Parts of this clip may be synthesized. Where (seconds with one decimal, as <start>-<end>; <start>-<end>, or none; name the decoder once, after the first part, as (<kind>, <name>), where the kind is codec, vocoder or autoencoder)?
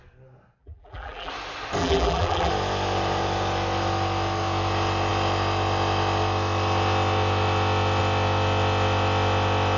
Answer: 0.6-1.3 (vocoder, BigVGAN v2); 1.8-2.5